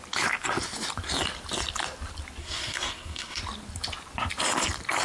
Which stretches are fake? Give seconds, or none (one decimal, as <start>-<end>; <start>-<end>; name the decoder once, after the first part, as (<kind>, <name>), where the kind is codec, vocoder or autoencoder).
2.4-3.4 (codec, SNAC)